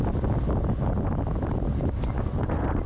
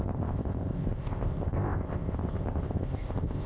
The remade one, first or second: second